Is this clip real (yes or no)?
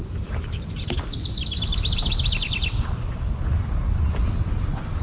yes